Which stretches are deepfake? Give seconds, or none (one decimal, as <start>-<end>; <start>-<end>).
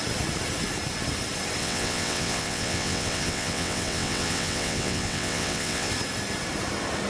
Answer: 1.6-5.9